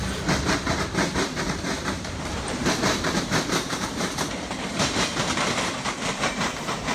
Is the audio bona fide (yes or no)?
no